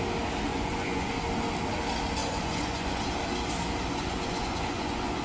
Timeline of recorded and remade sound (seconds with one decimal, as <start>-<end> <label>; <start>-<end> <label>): 0.0-0.5 recorded; 0.5-1.1 remade; 1.1-2.2 recorded; 2.2-3.0 remade; 3.0-3.9 recorded; 3.9-5.2 remade